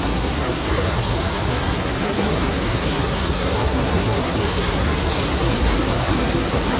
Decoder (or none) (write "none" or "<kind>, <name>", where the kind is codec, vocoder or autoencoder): codec, SNAC